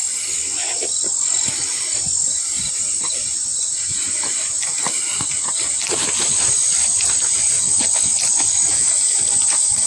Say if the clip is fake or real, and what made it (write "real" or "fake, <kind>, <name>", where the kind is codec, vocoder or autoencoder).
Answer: real